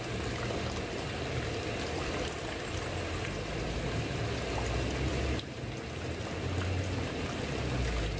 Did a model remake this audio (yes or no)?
no